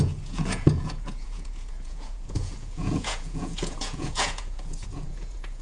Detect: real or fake fake